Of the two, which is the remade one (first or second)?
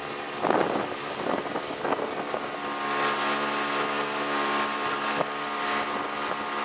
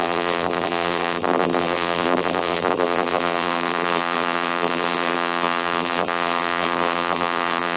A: second